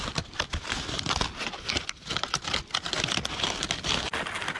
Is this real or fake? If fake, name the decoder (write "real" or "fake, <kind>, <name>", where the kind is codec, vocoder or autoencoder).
real